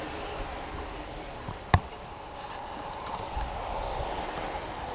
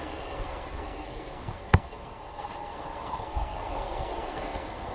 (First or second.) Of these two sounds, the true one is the first